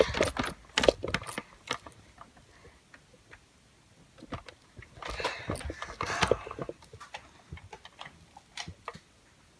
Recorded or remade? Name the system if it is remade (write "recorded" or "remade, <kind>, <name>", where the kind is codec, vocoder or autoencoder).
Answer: recorded